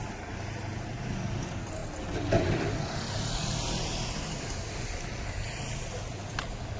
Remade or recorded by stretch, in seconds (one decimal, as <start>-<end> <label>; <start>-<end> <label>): 0.0-6.8 recorded